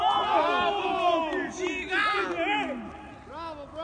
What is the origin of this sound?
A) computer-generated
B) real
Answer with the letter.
B